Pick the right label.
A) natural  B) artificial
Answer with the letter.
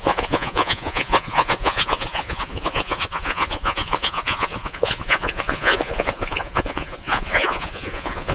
B